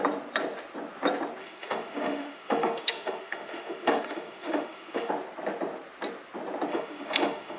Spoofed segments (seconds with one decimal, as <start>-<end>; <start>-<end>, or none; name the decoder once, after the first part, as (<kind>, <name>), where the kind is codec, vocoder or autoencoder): 1.4-5.1 (autoencoder, DAC-VAE); 6.7-7.6